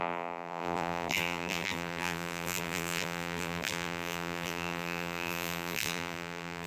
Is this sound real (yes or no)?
no